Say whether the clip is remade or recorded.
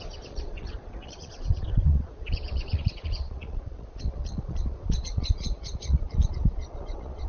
remade